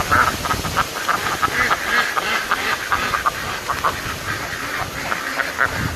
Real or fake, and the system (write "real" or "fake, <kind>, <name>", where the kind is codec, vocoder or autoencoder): real